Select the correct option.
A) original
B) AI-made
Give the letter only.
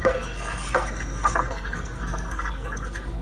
B